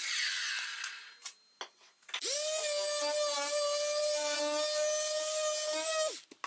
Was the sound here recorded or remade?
recorded